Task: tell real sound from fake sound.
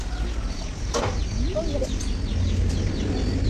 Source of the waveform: real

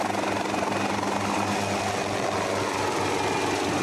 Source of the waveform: real